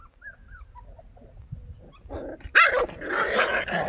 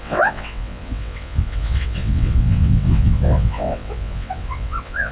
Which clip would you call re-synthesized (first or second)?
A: second